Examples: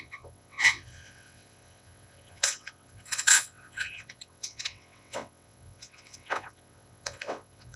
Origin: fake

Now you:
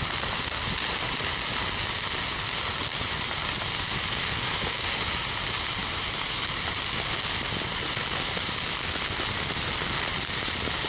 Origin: real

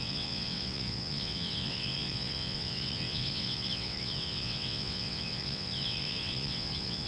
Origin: fake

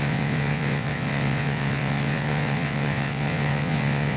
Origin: fake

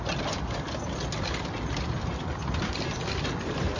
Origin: real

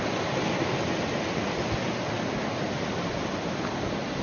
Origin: real